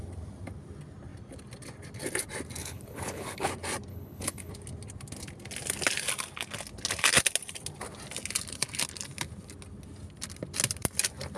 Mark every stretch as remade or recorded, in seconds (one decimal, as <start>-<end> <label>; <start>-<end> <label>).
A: 0.0-2.6 recorded; 2.6-3.5 remade; 3.5-3.9 recorded; 3.9-4.5 remade; 4.5-11.4 recorded